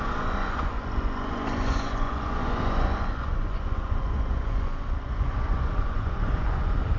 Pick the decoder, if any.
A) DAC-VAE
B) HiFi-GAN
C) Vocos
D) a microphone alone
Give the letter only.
C